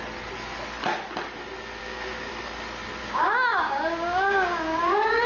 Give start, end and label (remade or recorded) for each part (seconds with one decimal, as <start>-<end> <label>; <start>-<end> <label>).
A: 0.0-1.8 recorded; 1.8-2.3 remade; 2.3-3.0 recorded; 3.0-5.3 remade